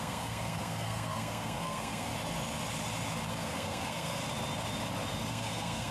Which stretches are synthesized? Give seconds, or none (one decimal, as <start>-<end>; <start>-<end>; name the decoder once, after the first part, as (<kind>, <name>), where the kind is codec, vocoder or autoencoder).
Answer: 0.0-2.1 (codec, SNAC); 3.3-4.2; 5.3-5.9